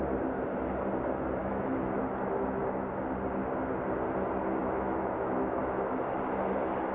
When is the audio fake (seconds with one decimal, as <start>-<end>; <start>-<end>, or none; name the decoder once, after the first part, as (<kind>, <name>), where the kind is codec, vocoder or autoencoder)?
1.4-2.0 (autoencoder, DAC-VAE); 4.6-5.6